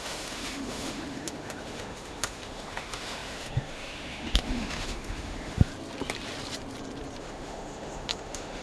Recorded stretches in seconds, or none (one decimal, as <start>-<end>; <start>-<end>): 5.7-7.2